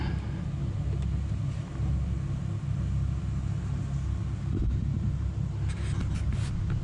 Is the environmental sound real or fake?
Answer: real